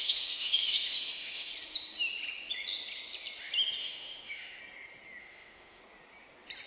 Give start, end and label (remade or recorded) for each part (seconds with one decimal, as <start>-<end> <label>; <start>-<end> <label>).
0.0-1.5 remade; 1.5-3.8 recorded; 3.8-4.6 remade; 4.6-5.2 recorded; 5.2-5.8 remade; 5.8-6.7 recorded